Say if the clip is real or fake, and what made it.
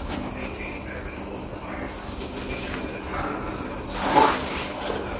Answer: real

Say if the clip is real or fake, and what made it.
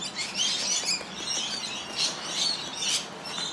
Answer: real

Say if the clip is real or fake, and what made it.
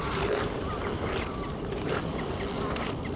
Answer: fake, vocoder, BigVGAN v2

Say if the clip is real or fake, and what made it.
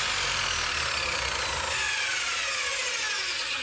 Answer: real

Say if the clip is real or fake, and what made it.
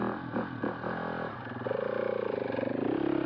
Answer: real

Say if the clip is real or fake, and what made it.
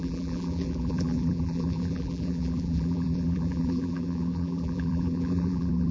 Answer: fake, vocoder, BigVGAN v2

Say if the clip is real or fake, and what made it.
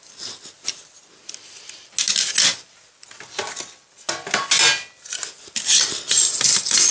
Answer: real